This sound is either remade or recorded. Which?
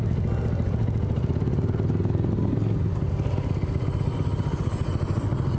recorded